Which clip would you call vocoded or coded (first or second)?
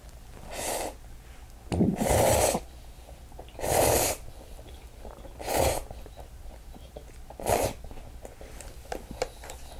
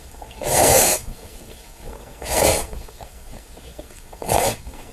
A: second